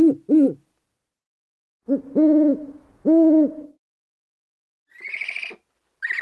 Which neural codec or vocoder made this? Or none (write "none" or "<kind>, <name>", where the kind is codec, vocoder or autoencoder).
none